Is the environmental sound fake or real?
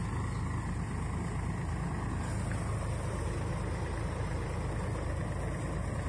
real